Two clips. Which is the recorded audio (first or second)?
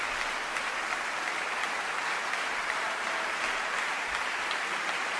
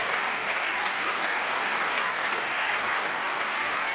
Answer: first